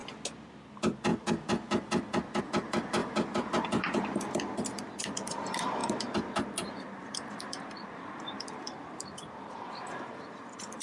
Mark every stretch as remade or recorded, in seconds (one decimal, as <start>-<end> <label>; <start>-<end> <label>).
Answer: 0.0-0.7 recorded; 0.7-10.8 remade